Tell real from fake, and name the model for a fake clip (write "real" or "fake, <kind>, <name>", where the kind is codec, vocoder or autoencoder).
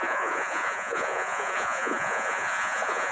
fake, vocoder, Vocos